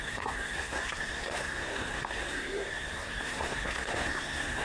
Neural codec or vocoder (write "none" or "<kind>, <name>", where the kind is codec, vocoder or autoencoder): codec, SNAC